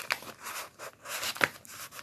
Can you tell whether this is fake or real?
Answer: fake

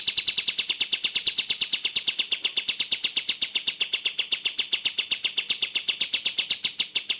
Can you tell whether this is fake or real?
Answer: real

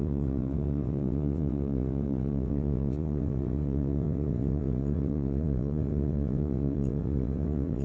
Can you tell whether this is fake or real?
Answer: fake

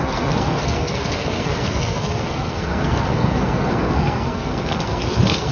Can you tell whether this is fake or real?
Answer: fake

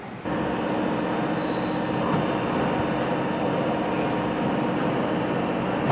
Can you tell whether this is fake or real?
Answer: real